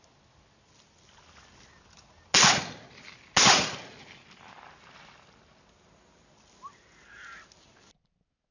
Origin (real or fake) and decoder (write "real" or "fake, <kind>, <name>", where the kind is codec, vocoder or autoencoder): real